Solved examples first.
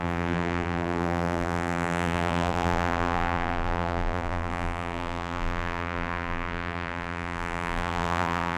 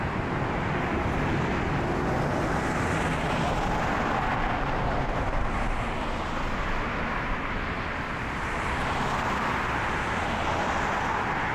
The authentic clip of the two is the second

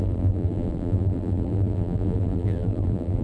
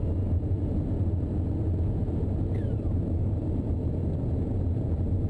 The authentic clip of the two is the second